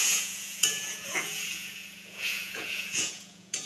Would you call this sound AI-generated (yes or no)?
yes